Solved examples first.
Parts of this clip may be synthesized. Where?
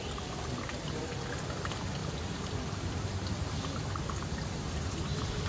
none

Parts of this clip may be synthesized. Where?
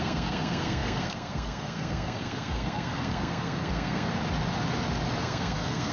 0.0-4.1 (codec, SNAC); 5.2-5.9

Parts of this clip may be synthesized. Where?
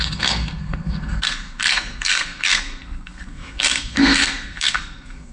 0.0-5.3 (codec, SNAC)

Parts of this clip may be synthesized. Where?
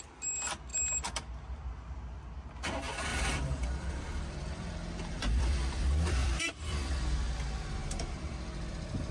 3.1-5.8 (vocoder, BigVGAN v2); 6.2-6.9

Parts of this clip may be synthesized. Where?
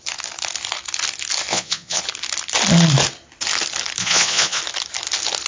1.5-2.0 (vocoder, Vocos); 4.0-4.6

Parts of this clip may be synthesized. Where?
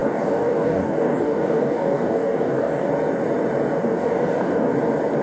0.0-2.9 (codec, DAC); 3.8-4.7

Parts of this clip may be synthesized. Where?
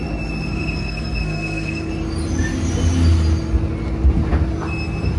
0.5-1.9 (codec, SNAC)